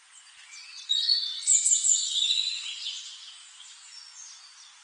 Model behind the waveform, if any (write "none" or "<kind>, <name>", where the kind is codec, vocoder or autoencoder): vocoder, Vocos